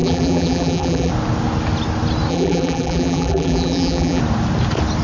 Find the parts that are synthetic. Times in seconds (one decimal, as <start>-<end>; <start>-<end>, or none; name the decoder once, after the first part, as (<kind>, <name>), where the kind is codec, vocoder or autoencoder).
0.0-1.1 (vocoder, BigVGAN v2); 2.3-4.2